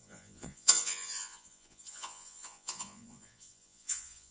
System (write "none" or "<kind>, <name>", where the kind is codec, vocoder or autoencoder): vocoder, Vocos